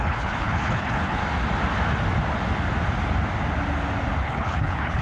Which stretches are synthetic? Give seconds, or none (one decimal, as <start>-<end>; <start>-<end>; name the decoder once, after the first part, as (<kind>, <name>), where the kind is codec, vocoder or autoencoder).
0.0-1.2 (codec, HILCodec); 4.2-5.0